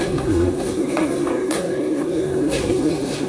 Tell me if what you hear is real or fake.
fake